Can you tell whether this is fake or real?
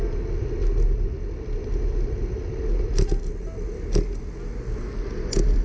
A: real